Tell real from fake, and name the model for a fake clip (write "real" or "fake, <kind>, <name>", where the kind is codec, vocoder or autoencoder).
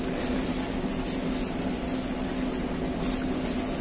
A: real